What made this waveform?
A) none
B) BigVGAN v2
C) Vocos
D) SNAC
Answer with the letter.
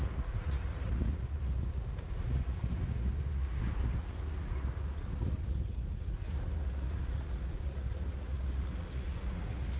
C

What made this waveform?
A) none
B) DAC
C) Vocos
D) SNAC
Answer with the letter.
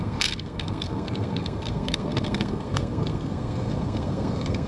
D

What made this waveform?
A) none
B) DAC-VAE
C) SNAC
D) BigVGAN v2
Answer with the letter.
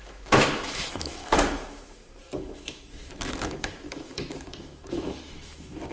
B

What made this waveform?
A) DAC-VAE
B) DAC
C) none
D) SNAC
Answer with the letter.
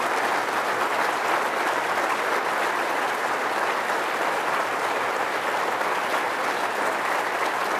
C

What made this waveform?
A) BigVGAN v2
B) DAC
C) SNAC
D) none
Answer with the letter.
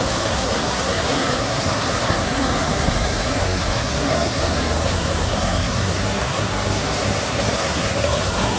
C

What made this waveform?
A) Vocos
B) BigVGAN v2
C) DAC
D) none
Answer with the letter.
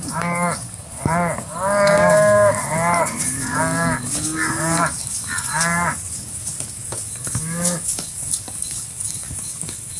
C